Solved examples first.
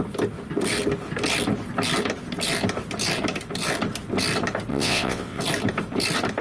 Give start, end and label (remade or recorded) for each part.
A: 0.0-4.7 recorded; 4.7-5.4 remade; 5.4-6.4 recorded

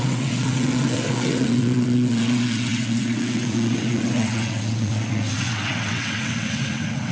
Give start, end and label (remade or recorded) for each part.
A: 0.0-7.1 remade

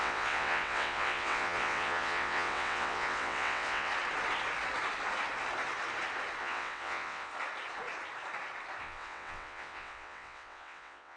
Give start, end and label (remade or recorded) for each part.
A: 0.0-3.9 remade; 3.9-6.4 recorded; 6.4-7.3 remade; 7.3-8.8 recorded; 8.8-11.2 remade